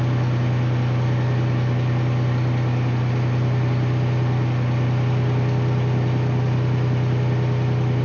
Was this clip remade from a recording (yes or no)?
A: no